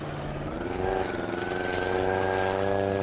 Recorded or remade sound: recorded